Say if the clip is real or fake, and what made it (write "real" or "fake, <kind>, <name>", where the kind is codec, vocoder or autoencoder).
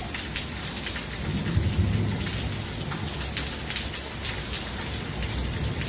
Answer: real